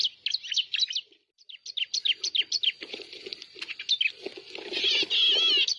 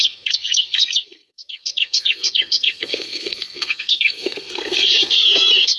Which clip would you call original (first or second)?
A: first